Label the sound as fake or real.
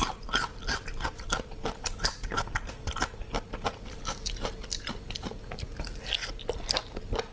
real